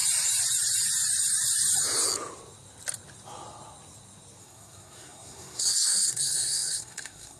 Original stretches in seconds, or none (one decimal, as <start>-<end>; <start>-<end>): 0.0-4.4